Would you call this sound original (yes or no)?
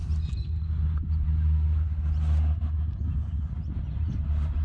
yes